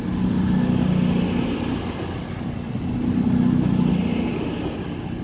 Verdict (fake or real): real